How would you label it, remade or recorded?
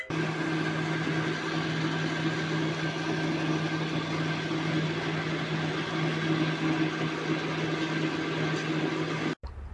recorded